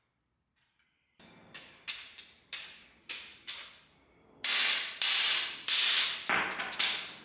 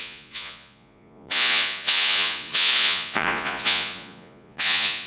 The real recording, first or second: first